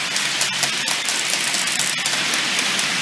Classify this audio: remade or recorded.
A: recorded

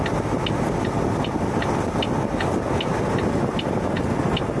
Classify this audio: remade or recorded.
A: recorded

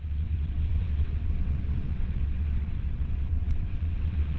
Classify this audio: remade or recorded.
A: remade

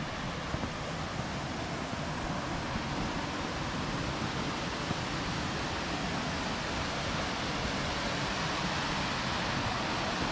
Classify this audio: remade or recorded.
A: recorded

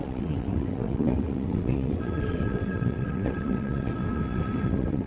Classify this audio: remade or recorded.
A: remade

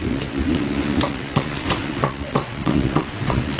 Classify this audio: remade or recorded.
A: remade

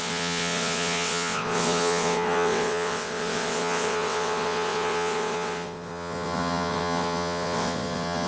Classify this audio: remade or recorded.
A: remade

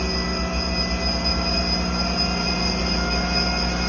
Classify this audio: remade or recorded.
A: recorded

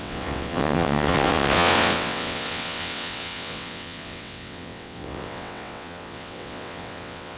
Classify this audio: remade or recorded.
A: remade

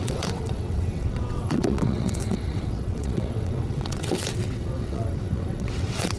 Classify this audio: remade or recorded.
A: remade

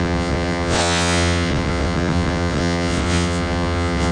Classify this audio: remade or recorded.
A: remade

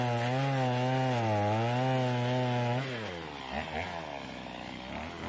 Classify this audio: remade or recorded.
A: recorded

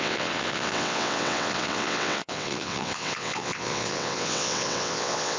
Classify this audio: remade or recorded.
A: remade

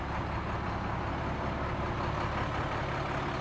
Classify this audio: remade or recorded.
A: recorded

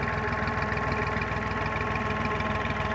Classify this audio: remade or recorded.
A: recorded